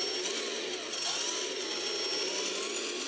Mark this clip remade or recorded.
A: recorded